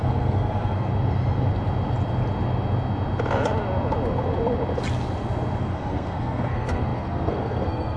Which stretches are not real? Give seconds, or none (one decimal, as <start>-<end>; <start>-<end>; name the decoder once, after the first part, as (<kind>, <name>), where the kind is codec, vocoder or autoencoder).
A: 0.0-0.9 (codec, SNAC); 5.6-8.0